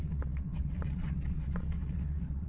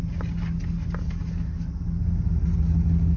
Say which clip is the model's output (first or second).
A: first